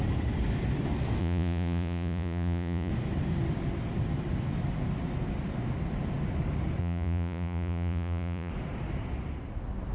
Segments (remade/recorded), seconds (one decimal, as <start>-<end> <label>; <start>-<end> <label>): 0.0-1.2 recorded; 1.2-2.9 remade; 2.9-6.8 recorded; 6.8-8.5 remade; 8.5-9.9 recorded